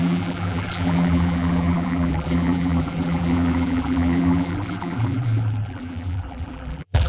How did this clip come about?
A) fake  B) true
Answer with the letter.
A